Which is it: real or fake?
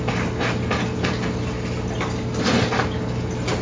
real